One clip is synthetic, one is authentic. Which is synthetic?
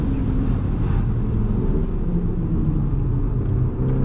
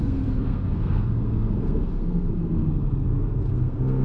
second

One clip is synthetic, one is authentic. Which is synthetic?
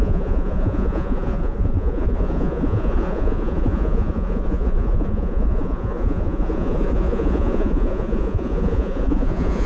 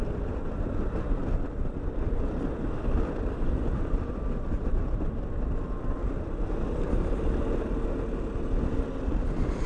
first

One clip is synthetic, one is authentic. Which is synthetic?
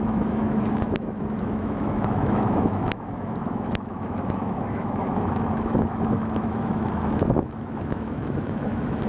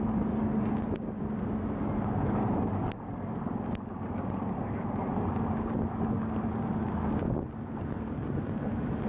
first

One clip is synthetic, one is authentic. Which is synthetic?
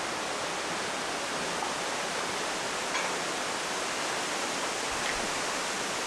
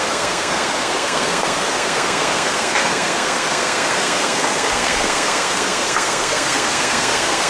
second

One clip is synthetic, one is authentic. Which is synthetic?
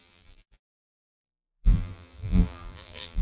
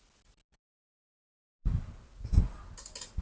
first